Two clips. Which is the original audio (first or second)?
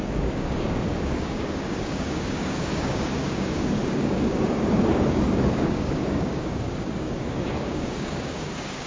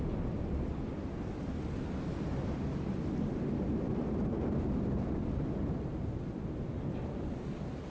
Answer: second